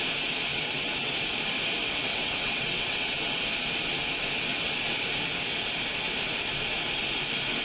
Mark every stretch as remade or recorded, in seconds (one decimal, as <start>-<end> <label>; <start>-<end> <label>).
0.0-0.5 recorded; 0.5-1.2 remade; 1.2-2.1 recorded; 2.1-3.4 remade; 3.4-7.6 recorded